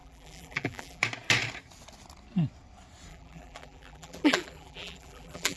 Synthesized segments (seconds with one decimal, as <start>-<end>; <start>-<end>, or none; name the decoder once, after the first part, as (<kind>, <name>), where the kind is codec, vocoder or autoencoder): 0.0-1.0 (vocoder, BigVGAN v2); 3.1-5.6